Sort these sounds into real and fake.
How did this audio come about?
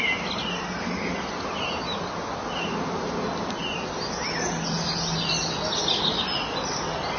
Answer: real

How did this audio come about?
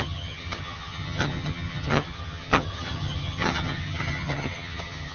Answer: fake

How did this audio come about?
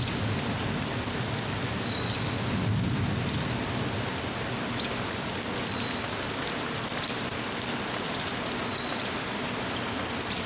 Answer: real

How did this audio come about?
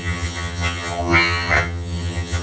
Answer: fake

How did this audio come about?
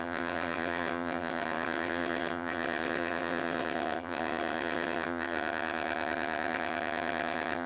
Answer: fake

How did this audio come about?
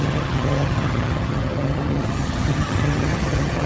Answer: fake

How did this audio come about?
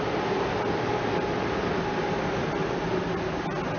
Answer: real